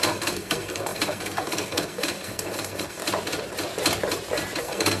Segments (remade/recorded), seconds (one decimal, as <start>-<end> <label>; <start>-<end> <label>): 0.0-3.0 remade; 3.0-4.6 recorded; 4.6-5.0 remade